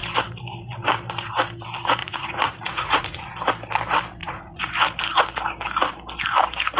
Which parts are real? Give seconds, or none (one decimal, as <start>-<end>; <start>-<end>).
0.0-2.0; 3.3-4.2; 4.7-6.8